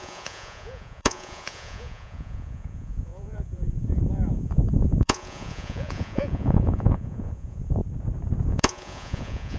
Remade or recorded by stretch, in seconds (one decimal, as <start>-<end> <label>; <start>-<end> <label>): 0.0-7.8 remade; 7.8-8.4 recorded; 8.4-9.6 remade